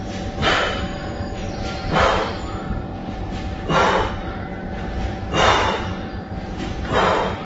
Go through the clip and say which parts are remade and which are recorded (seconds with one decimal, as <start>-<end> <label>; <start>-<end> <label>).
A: 0.0-0.4 recorded; 0.4-1.5 remade; 1.5-4.5 recorded; 4.5-6.8 remade; 6.8-7.4 recorded